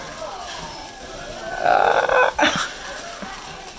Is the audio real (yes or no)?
yes